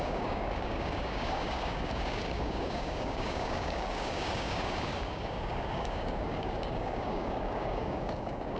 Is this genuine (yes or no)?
no